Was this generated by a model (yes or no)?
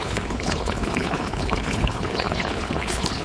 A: yes